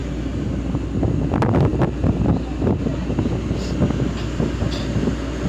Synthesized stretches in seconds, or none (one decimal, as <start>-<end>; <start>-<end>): 0.0-0.6